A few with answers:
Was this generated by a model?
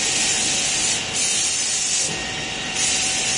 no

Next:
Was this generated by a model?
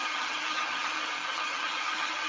yes